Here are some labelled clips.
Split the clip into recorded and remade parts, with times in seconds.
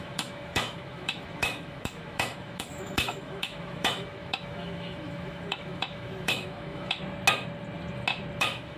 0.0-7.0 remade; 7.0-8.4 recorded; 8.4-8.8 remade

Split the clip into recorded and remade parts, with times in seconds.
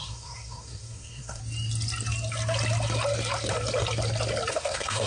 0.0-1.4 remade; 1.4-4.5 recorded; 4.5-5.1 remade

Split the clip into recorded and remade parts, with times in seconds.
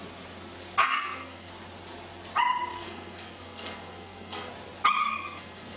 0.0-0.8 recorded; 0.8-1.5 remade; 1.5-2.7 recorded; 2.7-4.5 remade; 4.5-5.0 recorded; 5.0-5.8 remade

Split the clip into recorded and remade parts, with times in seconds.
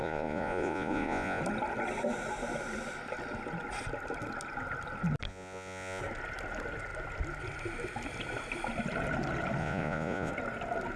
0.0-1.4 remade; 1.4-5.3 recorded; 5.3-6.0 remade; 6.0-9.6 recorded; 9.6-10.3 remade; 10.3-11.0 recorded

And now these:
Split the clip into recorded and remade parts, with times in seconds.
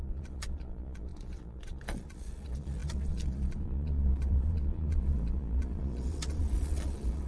0.0-7.3 remade